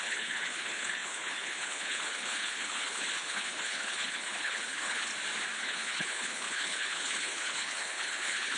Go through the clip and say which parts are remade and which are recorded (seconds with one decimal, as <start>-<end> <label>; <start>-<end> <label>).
0.0-5.1 remade; 5.1-5.6 recorded; 5.6-8.6 remade